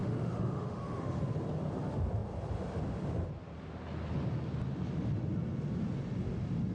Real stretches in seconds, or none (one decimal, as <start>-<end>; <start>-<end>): 1.2-6.7